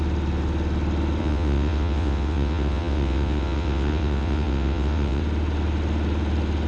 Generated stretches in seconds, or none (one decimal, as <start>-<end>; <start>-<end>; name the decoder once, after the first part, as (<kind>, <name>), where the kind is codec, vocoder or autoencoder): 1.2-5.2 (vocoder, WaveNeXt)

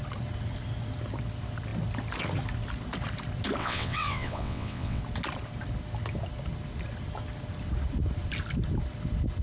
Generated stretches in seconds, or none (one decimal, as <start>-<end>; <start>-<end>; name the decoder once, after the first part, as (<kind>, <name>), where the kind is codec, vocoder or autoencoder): 3.6-5.0 (vocoder, WaveNeXt)

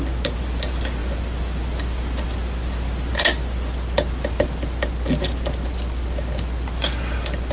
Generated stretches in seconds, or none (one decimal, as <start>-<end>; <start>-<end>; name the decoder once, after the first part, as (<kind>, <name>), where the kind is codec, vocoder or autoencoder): none